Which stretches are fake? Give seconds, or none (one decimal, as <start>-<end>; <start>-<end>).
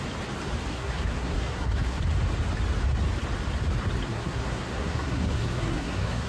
0.7-2.0; 4.1-6.3